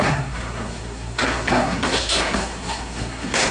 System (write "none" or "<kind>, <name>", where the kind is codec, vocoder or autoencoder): codec, SNAC